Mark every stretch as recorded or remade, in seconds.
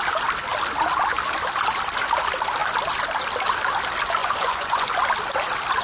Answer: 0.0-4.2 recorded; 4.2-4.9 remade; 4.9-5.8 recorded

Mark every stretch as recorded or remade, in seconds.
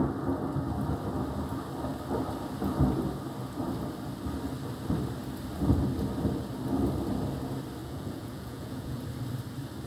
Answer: 0.0-7.8 recorded; 7.8-9.0 remade; 9.0-9.9 recorded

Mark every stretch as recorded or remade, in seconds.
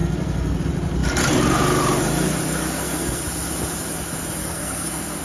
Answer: 0.0-0.6 remade; 0.6-2.6 recorded; 2.6-3.2 remade; 3.2-4.4 recorded; 4.4-5.2 remade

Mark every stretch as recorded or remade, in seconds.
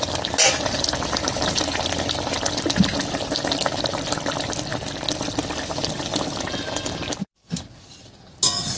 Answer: 0.0-8.8 recorded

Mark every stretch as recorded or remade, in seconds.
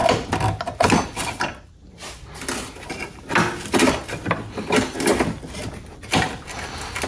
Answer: 0.0-7.1 recorded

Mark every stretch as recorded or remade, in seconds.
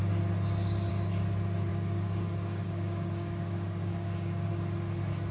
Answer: 0.0-1.7 recorded; 1.7-4.5 remade; 4.5-5.3 recorded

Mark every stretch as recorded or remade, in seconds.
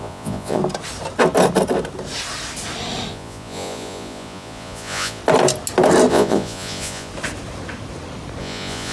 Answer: 0.0-0.6 remade; 0.6-3.1 recorded; 3.1-5.2 remade; 5.2-6.1 recorded; 6.1-7.1 remade; 7.1-8.4 recorded; 8.4-8.9 remade